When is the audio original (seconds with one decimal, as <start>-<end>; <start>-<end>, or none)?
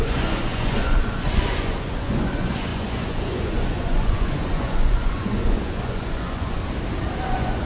6.6-7.3